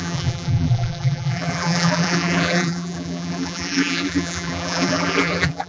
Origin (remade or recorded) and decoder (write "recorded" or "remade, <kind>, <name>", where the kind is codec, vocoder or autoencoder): remade, vocoder, BigVGAN v2